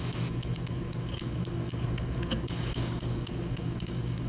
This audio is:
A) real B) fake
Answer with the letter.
B